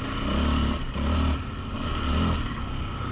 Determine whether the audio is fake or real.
real